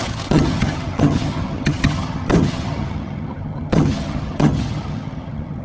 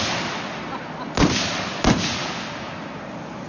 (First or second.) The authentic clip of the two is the second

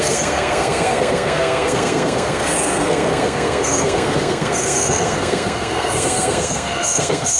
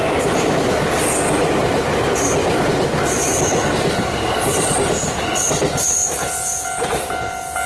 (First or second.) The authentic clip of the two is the second